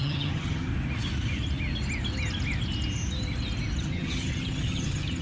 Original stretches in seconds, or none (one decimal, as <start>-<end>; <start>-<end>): 0.7-3.8